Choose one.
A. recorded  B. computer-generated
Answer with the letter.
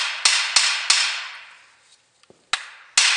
A